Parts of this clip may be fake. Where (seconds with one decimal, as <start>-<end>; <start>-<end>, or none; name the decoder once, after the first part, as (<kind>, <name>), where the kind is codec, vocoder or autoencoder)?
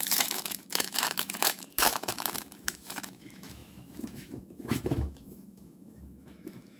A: 0.0-6.8 (autoencoder, DAC-VAE)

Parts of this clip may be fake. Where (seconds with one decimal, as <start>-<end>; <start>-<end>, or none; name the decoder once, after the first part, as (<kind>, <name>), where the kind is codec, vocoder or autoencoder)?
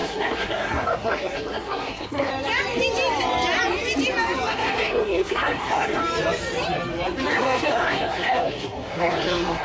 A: 0.0-2.3 (codec, SNAC); 4.5-6.0; 7.3-9.6